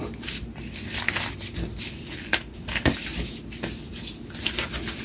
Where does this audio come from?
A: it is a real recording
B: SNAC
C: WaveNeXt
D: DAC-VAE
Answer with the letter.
A